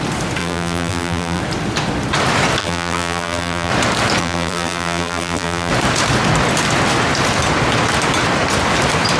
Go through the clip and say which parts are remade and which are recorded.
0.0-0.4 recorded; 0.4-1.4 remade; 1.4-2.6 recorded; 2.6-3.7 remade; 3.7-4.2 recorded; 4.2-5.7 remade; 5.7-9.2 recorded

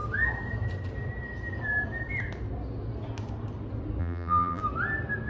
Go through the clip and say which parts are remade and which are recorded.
0.0-4.0 recorded; 4.0-4.6 remade; 4.6-5.3 recorded

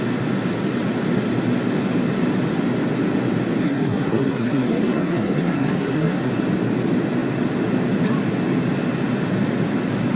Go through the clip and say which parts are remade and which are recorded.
0.0-3.6 recorded; 3.6-6.3 remade; 6.3-10.2 recorded